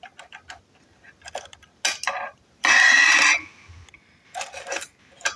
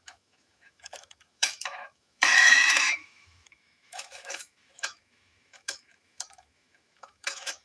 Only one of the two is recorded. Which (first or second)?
first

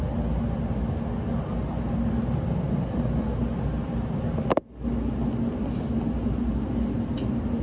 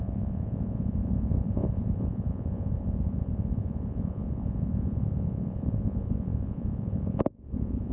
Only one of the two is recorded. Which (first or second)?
first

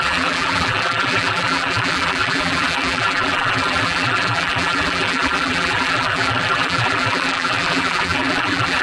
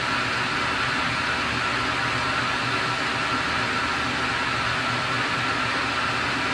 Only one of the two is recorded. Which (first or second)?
second